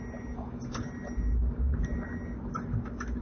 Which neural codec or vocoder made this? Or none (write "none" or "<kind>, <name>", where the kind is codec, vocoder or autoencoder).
none